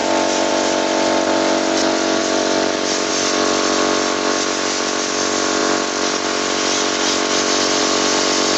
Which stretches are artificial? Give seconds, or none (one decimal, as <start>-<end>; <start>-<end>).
none